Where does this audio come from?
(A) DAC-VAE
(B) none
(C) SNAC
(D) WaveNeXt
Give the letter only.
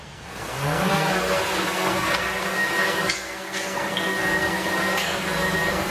C